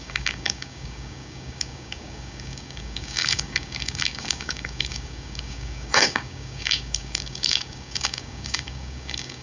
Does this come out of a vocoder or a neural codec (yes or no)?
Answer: yes